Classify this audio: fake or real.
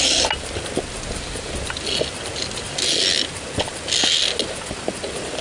real